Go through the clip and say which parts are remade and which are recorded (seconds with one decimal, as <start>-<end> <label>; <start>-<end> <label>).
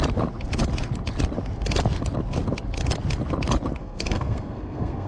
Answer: 0.0-3.8 recorded; 3.8-5.1 remade